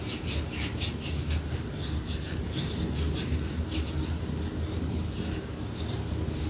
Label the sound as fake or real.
real